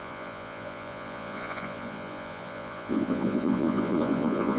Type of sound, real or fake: fake